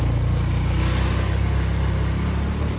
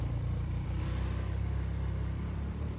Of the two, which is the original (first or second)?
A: first